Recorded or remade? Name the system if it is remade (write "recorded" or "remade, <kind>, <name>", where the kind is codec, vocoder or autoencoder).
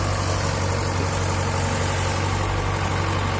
recorded